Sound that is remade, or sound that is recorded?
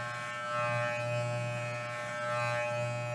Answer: recorded